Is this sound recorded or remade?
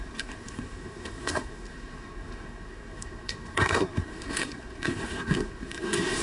remade